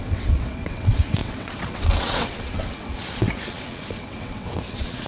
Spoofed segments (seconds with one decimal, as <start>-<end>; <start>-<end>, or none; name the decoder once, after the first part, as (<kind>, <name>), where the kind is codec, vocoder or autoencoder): 0.0-5.1 (vocoder, WaveNeXt)